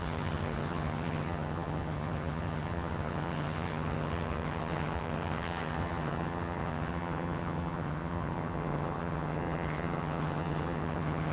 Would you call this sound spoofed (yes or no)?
yes